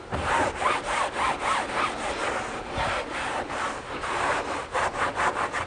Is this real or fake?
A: fake